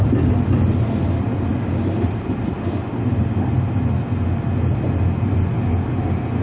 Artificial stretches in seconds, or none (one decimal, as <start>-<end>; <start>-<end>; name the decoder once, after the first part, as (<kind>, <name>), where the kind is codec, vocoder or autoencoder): none